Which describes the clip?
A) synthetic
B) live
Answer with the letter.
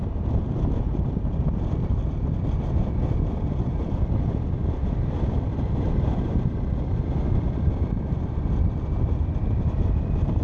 B